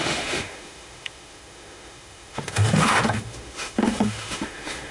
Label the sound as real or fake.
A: fake